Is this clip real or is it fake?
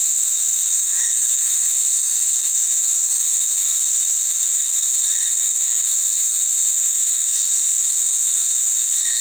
fake